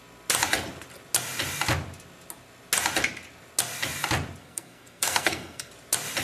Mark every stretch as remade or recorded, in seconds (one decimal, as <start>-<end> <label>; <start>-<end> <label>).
0.0-4.4 recorded; 4.4-5.7 remade; 5.7-6.2 recorded